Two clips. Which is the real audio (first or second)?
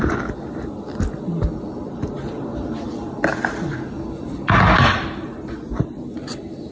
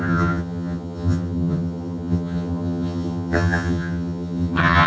first